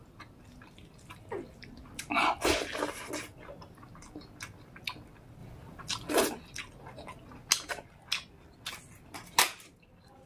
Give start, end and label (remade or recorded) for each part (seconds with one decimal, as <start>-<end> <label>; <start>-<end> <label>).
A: 0.0-10.3 recorded